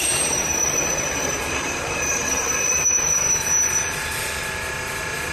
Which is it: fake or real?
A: fake